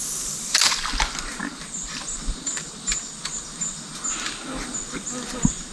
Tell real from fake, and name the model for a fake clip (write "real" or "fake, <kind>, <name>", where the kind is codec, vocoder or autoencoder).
real